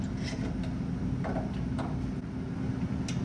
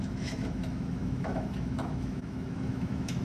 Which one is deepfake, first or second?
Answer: second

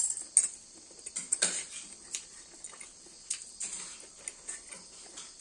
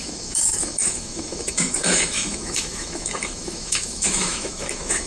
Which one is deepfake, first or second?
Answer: second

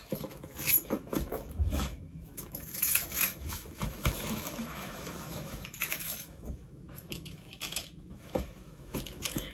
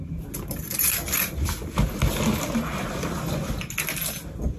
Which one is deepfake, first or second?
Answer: first